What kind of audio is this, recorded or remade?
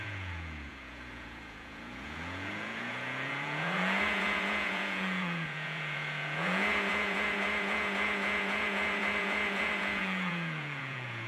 remade